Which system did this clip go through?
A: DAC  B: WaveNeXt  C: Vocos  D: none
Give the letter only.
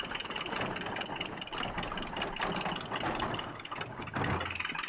D